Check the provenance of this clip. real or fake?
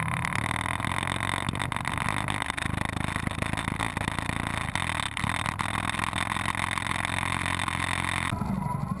real